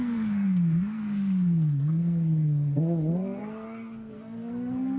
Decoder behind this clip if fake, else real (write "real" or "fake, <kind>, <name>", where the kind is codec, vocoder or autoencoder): fake, codec, SNAC